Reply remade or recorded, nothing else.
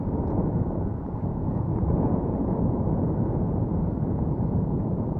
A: remade